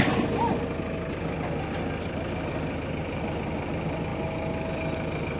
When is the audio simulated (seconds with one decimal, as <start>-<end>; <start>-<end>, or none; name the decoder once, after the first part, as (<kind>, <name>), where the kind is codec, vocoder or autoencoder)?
none